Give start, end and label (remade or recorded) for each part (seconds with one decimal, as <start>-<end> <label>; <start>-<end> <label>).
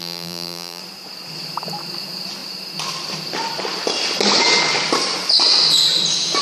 0.0-0.8 remade; 0.8-6.4 recorded